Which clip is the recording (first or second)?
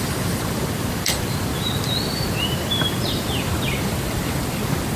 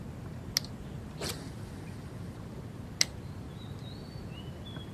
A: second